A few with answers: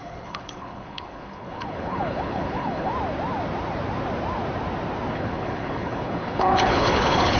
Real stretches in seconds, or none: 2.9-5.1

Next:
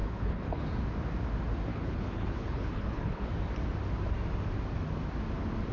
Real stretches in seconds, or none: 0.6-1.7; 3.3-5.7